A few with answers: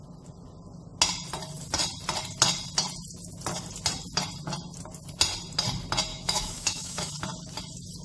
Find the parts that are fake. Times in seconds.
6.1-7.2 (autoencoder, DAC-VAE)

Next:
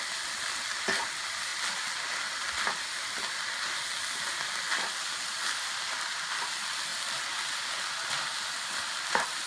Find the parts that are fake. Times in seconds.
none

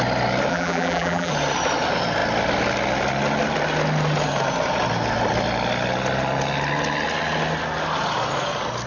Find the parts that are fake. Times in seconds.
0.5-1.3 (vocoder, BigVGAN v2)

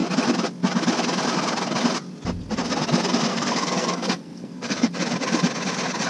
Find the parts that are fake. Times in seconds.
3.3-4.9 (codec, SNAC)

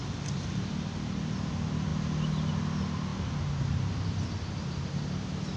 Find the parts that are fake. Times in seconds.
none

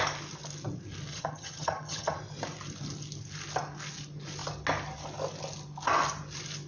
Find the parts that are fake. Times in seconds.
1.1-2.2 (vocoder, HiFi-GAN)

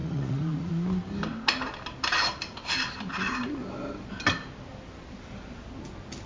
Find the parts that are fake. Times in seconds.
0.0-0.7 (vocoder, Vocos)